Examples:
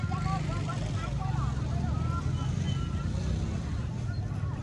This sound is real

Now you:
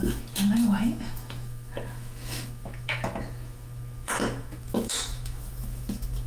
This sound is fake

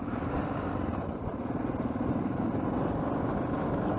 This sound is real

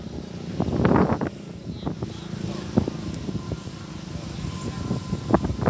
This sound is real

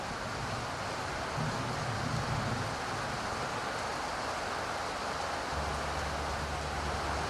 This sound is real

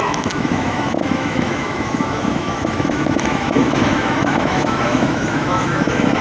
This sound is fake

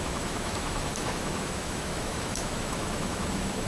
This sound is fake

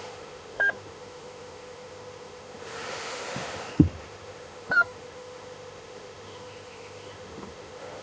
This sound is fake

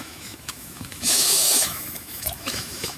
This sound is fake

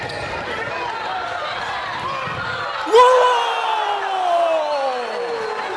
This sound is real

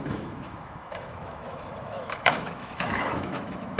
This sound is fake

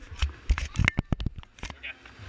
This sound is real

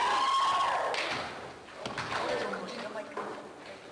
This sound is real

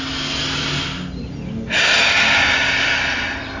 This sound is real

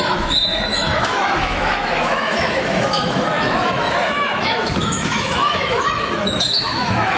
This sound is fake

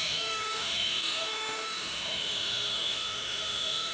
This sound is fake